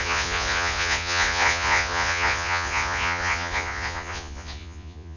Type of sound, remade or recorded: remade